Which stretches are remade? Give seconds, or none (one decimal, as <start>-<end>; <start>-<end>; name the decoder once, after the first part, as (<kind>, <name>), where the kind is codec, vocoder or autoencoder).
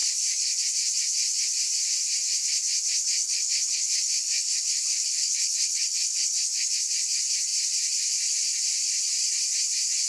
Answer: 0.0-0.6 (codec, HILCodec); 3.2-6.7